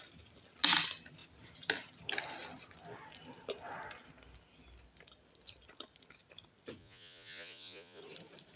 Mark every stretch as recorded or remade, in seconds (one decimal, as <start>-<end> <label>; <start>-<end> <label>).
0.0-6.8 recorded; 6.8-8.0 remade; 8.0-8.6 recorded